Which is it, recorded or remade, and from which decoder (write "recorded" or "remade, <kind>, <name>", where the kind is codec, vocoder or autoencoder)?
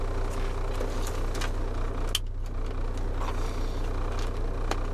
recorded